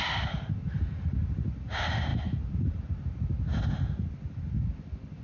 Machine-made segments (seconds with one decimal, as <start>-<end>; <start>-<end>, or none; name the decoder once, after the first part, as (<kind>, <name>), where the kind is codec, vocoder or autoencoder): none

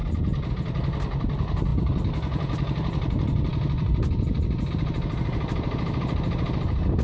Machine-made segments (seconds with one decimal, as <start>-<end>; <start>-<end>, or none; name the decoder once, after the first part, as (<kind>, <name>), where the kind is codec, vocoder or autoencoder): none

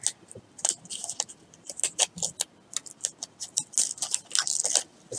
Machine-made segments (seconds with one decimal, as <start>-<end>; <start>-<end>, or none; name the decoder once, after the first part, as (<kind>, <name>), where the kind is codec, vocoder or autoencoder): none

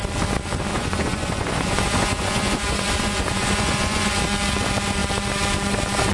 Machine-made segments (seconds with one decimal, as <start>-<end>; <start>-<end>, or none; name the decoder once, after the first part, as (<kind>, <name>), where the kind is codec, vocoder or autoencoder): 0.7-4.2 (vocoder, Vocos)

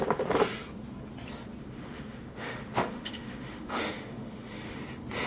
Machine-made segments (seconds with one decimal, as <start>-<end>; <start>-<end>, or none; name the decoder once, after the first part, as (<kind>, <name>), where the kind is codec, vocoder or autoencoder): 1.6-4.8 (autoencoder, DAC-VAE)

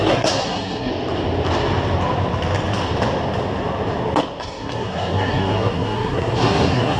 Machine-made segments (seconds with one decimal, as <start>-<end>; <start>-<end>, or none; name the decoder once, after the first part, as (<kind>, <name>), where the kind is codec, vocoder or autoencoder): 0.0-0.9 (codec, SNAC); 4.4-7.0

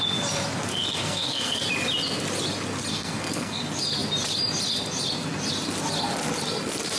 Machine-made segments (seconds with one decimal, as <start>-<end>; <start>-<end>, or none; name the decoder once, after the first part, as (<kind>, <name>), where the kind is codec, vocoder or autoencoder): 0.7-1.6 (codec, SNAC); 2.9-3.6